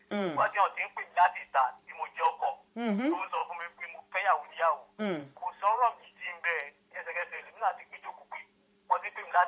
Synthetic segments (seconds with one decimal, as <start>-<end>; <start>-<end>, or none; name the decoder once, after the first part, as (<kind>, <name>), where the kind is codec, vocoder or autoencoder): 0.0-0.7 (vocoder, Vocos); 1.9-3.4; 5.0-6.3; 6.8-9.5